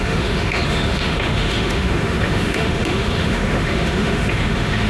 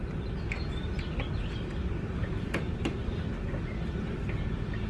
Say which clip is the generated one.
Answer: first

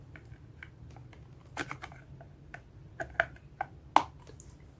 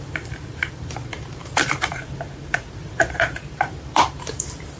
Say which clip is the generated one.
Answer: second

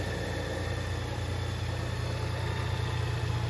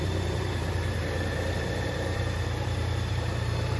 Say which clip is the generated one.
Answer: second